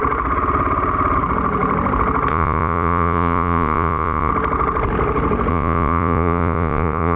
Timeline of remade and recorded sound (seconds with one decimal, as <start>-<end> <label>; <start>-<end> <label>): 0.0-2.3 recorded; 2.3-4.3 remade; 4.3-5.5 recorded; 5.5-7.2 remade